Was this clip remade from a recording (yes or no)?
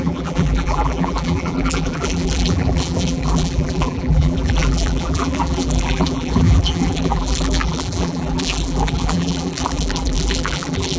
yes